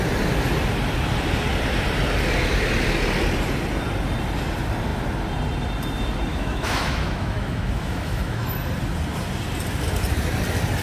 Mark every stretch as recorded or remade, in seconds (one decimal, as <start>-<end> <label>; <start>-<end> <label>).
0.0-6.3 recorded; 6.3-8.5 remade; 8.5-10.8 recorded